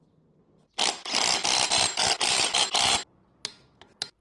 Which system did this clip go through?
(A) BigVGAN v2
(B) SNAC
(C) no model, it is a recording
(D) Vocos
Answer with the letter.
C